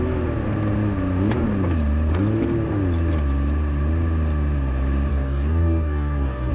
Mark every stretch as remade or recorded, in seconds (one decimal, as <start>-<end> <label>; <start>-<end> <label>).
0.0-5.1 recorded; 5.1-6.5 remade